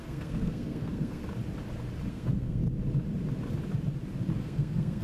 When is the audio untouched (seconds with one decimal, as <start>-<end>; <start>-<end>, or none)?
1.2-2.1; 2.6-4.4

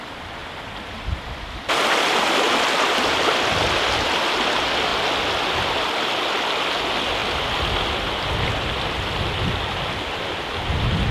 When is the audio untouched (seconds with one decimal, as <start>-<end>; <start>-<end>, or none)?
0.0-0.4; 3.6-11.1

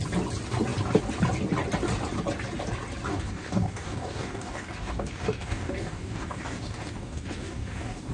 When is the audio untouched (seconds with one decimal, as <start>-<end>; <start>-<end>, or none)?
0.0-3.1

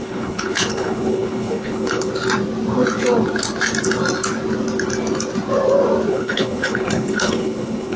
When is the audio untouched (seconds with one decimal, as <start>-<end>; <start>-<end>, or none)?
2.1-6.1

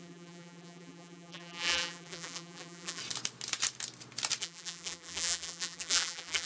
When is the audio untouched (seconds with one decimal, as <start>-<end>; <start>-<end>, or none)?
3.0-4.4

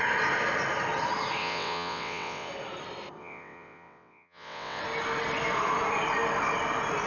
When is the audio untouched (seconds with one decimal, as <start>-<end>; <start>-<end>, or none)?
0.0-1.4; 2.5-3.2; 4.8-7.1

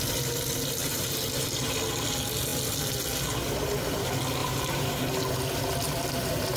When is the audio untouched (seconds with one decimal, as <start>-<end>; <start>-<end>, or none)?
0.0-0.8; 1.7-4.4; 5.0-6.6